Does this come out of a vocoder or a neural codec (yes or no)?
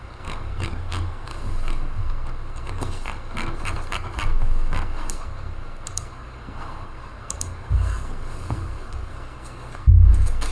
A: yes